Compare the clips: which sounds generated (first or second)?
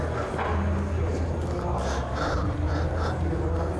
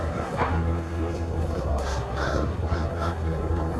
second